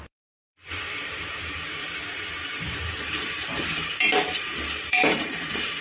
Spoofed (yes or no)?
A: yes